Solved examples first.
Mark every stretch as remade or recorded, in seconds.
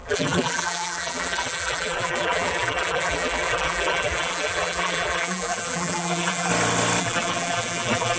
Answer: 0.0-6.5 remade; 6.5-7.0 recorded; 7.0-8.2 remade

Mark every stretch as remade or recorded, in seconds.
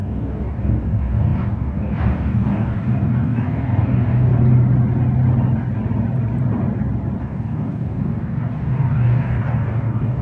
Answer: 0.0-4.3 remade; 4.3-7.2 recorded; 7.2-10.2 remade